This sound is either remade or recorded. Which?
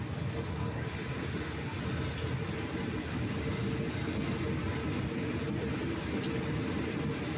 recorded